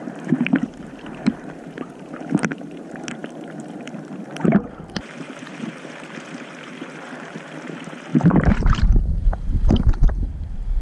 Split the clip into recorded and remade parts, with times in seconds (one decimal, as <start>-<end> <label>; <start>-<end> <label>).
0.0-10.8 remade